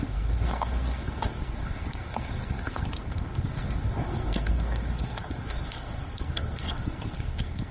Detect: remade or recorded remade